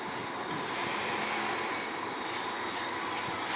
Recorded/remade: recorded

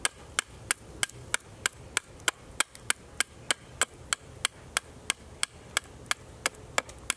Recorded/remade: recorded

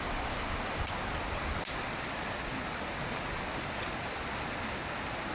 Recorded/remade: recorded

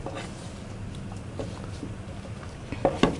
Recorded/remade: recorded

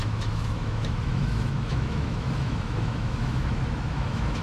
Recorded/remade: remade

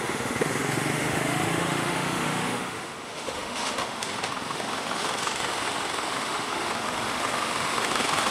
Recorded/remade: remade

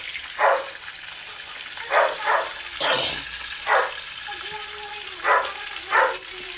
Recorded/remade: recorded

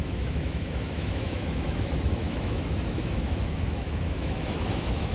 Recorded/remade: remade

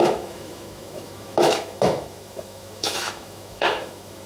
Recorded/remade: remade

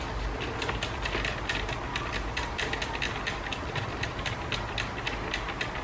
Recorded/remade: recorded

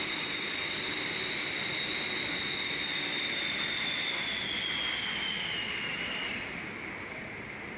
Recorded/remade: recorded